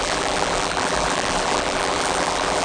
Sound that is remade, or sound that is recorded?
remade